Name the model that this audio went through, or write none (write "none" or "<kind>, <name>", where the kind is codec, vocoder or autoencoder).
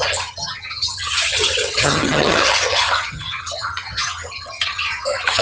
vocoder, HiFi-GAN